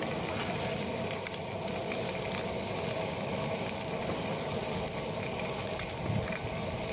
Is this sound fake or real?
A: real